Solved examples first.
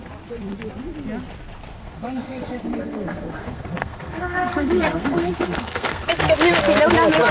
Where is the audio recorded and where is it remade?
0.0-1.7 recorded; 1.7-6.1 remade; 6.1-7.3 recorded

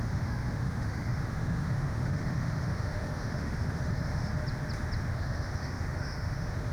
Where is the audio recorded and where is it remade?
0.0-4.3 remade; 4.3-5.1 recorded; 5.1-6.7 remade